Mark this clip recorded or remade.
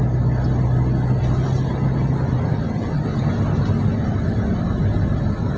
recorded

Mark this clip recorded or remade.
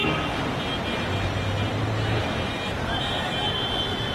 recorded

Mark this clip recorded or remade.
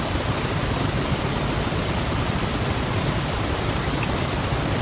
recorded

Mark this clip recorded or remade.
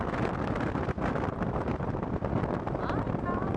recorded